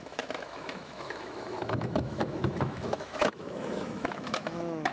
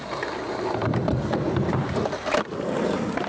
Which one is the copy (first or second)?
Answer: first